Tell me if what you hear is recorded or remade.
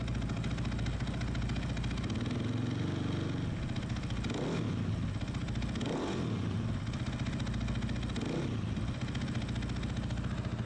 recorded